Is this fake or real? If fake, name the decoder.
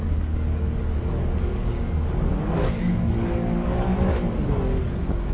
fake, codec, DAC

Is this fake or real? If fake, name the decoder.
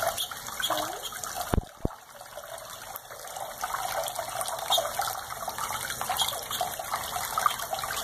real